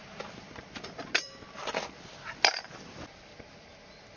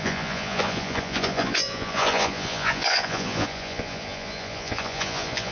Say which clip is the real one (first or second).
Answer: first